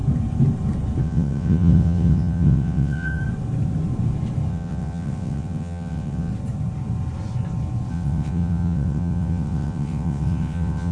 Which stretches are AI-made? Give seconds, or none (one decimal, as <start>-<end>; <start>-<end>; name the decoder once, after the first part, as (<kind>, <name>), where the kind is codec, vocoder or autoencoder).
1.0-3.2 (vocoder, WaveNeXt); 4.5-6.3; 7.9-10.9